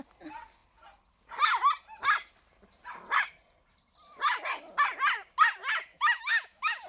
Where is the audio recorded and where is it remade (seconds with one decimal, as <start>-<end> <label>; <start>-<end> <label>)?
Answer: 0.0-5.9 recorded; 5.9-6.9 remade